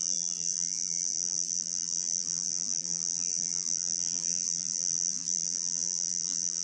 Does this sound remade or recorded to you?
remade